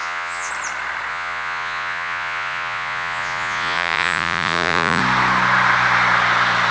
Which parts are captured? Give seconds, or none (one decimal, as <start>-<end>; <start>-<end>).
0.5-1.1; 5.0-6.7